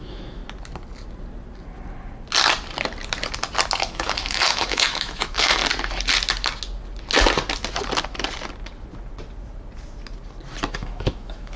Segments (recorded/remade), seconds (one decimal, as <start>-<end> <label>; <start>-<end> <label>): 0.0-0.4 remade; 0.4-3.8 recorded; 3.8-5.6 remade; 5.6-10.7 recorded; 10.7-11.6 remade